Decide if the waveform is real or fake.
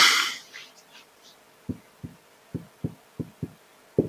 real